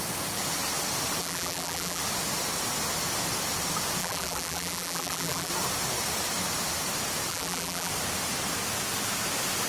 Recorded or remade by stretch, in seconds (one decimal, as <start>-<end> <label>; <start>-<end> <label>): 0.0-1.2 recorded; 1.2-2.0 remade; 2.0-4.0 recorded; 4.0-5.5 remade; 5.5-7.3 recorded; 7.3-7.9 remade; 7.9-9.7 recorded